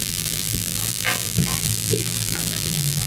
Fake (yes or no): yes